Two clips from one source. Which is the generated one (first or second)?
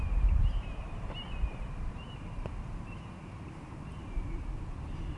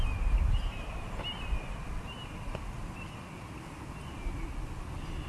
first